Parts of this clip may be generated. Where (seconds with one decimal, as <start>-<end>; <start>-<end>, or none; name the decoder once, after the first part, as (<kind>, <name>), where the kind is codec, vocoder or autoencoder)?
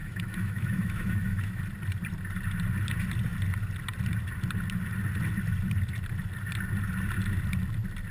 0.0-1.6 (autoencoder, DAC-VAE)